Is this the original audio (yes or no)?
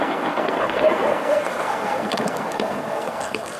no